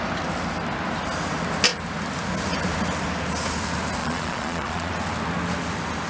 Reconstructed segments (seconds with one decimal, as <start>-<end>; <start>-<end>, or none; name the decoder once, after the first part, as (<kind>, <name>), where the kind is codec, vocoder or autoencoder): 4.0-4.9 (vocoder, Vocos)